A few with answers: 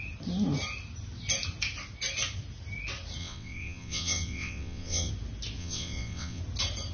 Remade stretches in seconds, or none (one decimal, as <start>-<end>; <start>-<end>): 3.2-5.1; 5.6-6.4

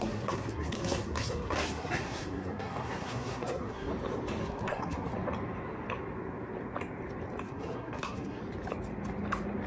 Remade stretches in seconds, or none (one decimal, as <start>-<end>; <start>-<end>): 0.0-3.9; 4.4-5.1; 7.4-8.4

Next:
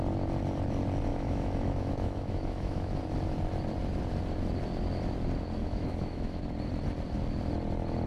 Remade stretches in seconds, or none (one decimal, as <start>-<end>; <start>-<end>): 1.1-3.0; 5.6-6.4